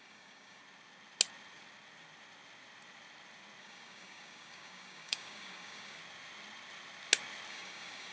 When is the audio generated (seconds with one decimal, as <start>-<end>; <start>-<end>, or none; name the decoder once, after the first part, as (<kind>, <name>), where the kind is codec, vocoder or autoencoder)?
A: 0.0-0.6 (codec, DAC); 3.6-6.0; 7.5-8.1